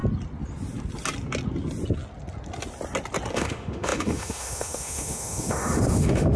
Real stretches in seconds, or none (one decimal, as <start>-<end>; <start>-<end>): 0.0-3.3